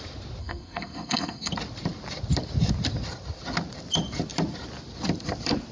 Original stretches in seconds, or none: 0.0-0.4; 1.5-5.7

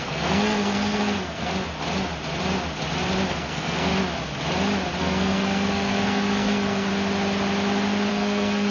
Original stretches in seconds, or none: 1.5-3.3; 3.9-5.0; 6.9-8.1

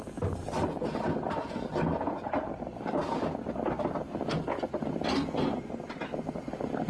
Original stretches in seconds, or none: 0.0-6.9

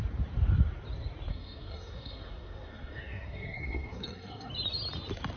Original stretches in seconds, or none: 0.0-1.3; 4.5-5.4